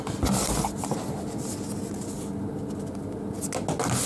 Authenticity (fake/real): real